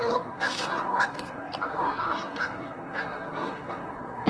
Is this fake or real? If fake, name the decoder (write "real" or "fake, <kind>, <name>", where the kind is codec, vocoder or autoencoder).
fake, codec, SNAC